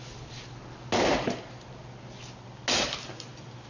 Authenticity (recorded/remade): recorded